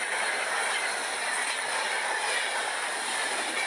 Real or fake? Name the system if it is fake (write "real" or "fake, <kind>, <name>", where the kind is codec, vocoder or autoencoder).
real